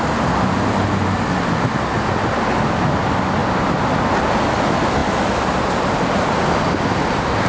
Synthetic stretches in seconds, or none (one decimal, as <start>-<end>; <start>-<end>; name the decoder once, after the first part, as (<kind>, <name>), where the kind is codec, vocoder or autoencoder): none